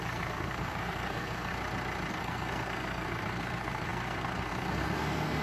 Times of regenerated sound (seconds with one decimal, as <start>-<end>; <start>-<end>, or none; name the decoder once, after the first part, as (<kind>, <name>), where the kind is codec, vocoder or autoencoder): 0.0-1.5 (codec, SNAC); 2.1-5.4

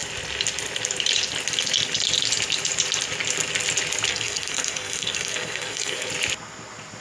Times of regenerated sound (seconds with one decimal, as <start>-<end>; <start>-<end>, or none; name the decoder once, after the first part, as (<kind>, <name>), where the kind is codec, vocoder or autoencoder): 4.1-6.1 (codec, SNAC)

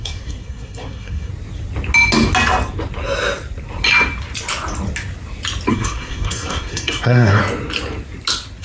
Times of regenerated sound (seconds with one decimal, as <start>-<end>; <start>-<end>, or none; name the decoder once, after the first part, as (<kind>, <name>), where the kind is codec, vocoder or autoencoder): 0.0-1.3 (codec, SNAC); 5.7-7.4

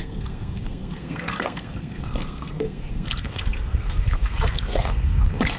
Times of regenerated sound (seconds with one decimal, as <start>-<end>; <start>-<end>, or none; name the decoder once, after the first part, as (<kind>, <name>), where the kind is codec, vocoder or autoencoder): 0.0-5.6 (codec, SNAC)

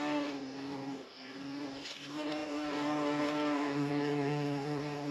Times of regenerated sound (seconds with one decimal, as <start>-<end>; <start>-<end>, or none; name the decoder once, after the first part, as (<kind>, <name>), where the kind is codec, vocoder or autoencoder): 0.0-5.1 (codec, DAC)

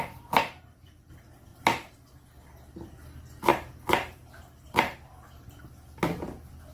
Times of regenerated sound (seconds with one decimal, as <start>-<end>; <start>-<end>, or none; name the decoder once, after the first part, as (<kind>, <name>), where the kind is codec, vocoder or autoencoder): 0.4-1.1 (vocoder, BigVGAN v2); 1.5-2.1; 3.5-6.2